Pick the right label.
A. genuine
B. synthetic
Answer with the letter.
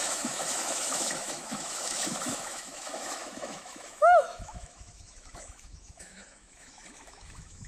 B